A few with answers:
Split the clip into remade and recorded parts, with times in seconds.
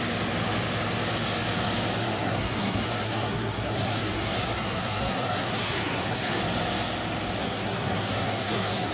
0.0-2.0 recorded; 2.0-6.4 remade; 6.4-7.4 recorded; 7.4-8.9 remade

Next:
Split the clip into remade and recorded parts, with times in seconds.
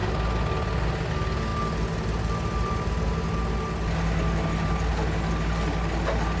0.0-6.4 recorded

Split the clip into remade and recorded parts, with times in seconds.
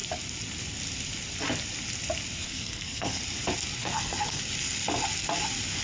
0.0-2.4 recorded; 2.4-3.2 remade; 3.2-3.8 recorded; 3.8-4.4 remade; 4.4-5.8 recorded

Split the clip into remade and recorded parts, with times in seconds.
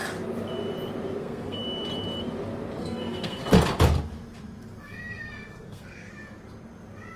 0.0-1.2 recorded; 1.2-1.6 remade; 1.6-2.8 recorded; 2.8-3.4 remade; 3.4-4.8 recorded; 4.8-6.1 remade; 6.1-7.2 recorded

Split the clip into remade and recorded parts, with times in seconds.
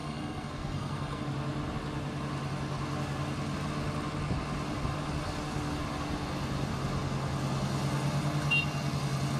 0.0-1.2 remade; 1.2-9.4 recorded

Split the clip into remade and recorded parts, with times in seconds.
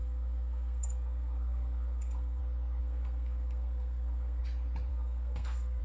0.0-2.4 remade; 2.4-2.8 recorded; 2.8-4.4 remade; 4.4-4.9 recorded; 4.9-5.8 remade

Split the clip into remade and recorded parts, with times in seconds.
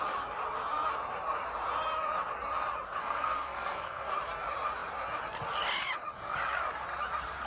0.0-3.0 recorded; 3.0-4.1 remade; 4.1-7.5 recorded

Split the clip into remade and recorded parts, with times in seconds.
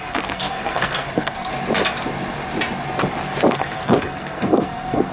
0.0-1.5 remade; 1.5-3.5 recorded; 3.5-5.1 remade